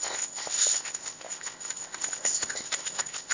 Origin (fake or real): fake